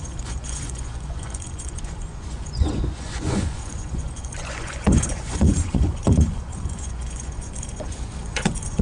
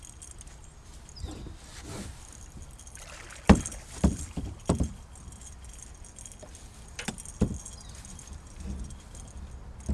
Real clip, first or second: second